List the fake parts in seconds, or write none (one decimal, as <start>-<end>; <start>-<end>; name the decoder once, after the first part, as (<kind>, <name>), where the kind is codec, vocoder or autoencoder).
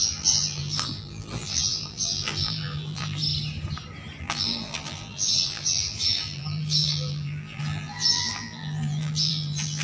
0.0-3.2 (vocoder, BigVGAN v2); 4.2-9.8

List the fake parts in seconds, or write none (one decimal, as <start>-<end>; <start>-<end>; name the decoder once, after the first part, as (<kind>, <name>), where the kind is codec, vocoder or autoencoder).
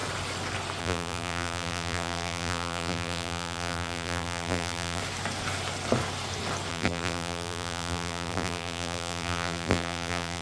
0.8-5.0 (vocoder, BigVGAN v2); 6.7-10.4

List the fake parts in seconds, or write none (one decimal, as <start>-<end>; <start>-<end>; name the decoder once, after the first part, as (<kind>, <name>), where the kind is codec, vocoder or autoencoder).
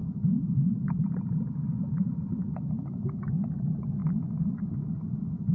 0.0-2.7 (vocoder, BigVGAN v2)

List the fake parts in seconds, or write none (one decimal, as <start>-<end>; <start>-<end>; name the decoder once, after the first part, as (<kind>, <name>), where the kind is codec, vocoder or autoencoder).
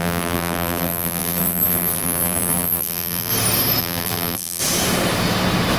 0.0-3.3 (vocoder, BigVGAN v2); 3.8-4.6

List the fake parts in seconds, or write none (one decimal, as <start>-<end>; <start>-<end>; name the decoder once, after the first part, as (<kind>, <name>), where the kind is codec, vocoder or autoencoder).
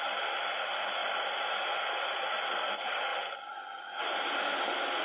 0.0-1.0 (vocoder, BigVGAN v2); 1.9-3.1; 4.0-5.0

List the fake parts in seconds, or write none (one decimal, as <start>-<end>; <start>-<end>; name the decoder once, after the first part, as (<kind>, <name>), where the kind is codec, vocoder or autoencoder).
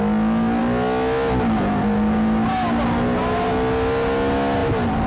none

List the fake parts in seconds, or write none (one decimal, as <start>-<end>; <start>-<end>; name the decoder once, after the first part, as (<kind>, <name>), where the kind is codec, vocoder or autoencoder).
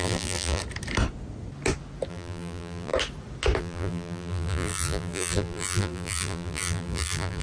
0.0-0.6 (vocoder, BigVGAN v2); 2.1-2.9; 3.6-7.4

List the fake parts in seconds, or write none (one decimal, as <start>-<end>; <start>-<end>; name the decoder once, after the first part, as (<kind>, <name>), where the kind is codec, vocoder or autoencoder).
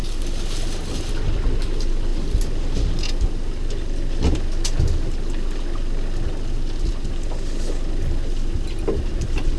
none